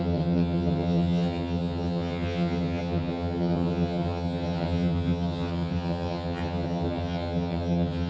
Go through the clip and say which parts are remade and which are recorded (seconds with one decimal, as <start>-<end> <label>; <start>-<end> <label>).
0.0-8.1 remade

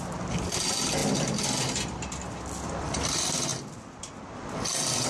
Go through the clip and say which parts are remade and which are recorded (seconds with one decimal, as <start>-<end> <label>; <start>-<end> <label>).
0.0-5.1 recorded

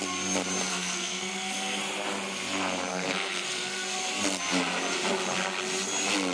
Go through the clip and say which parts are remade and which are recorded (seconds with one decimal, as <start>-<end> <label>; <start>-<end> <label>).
0.0-0.7 recorded; 0.7-1.8 remade; 1.8-2.9 recorded; 2.9-4.1 remade; 4.1-6.3 recorded

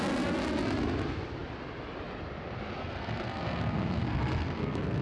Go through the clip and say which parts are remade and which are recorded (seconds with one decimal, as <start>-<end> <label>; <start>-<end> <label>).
0.0-2.8 recorded; 2.8-5.0 remade

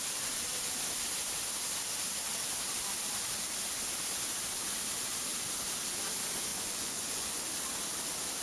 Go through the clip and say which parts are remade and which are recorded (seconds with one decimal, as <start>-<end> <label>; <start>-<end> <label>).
0.0-6.5 recorded; 6.5-7.4 remade; 7.4-8.4 recorded

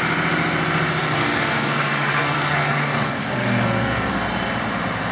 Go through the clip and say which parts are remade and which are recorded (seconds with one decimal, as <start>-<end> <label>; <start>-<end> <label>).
0.0-1.0 recorded; 1.0-4.1 remade; 4.1-5.1 recorded

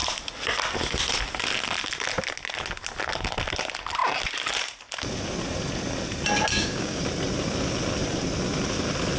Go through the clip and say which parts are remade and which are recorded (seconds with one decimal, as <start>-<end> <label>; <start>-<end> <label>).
0.0-6.5 recorded; 6.5-7.0 remade; 7.0-9.2 recorded

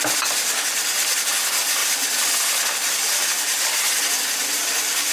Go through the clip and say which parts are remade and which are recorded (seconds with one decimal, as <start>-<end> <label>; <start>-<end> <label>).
0.0-1.8 recorded; 1.8-4.0 remade; 4.0-5.1 recorded